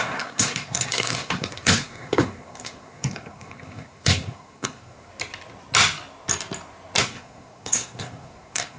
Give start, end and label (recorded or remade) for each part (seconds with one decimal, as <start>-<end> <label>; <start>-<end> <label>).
0.0-5.1 remade; 5.1-7.0 recorded; 7.0-8.8 remade